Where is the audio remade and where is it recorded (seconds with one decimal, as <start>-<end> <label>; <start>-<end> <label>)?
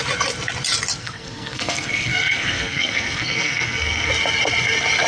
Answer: 0.0-1.0 recorded; 1.0-4.1 remade; 4.1-5.1 recorded